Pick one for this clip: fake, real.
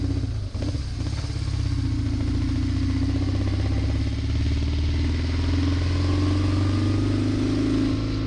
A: real